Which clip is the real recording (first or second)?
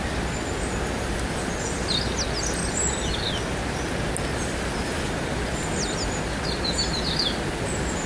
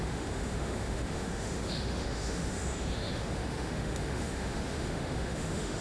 first